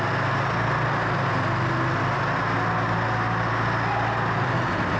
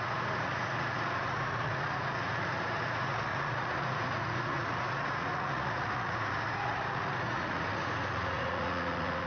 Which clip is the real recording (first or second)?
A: first